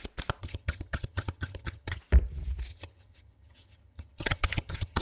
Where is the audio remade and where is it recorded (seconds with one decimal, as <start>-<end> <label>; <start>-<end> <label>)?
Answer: 0.0-0.4 recorded; 0.4-2.0 remade; 2.0-2.7 recorded; 2.7-5.0 remade